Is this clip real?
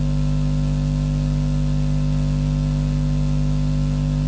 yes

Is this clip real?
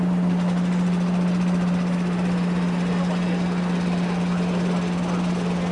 yes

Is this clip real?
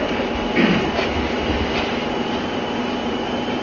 yes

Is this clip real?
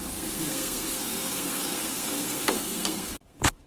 no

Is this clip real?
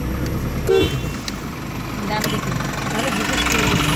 yes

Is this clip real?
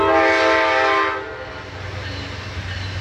yes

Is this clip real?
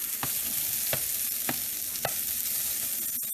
yes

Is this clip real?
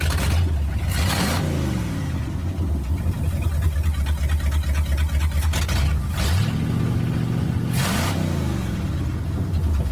yes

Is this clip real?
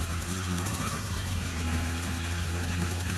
no